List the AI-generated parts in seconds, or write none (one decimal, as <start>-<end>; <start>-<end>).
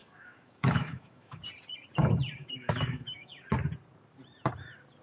0.0-1.4; 2.4-3.4